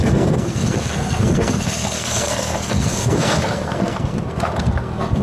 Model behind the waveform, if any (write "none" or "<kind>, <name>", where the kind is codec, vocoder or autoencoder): codec, SNAC